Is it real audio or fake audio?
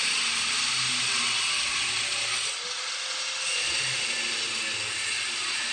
real